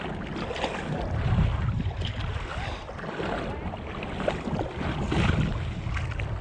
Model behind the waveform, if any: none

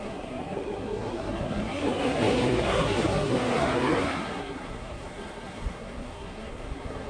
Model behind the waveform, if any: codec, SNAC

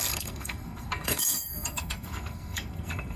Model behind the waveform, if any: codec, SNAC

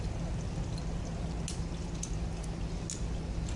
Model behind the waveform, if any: none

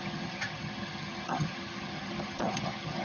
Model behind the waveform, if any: vocoder, HiFi-GAN